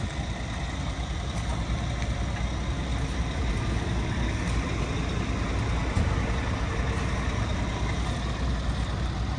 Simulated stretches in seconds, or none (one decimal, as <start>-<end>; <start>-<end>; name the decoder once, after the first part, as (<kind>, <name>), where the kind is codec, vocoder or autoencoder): none